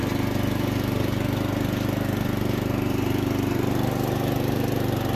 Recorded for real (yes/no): yes